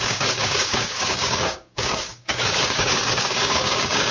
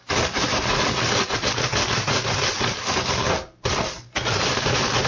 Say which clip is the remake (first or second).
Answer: first